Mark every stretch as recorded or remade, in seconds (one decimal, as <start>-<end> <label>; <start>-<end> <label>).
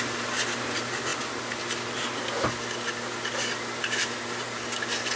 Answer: 0.0-5.2 recorded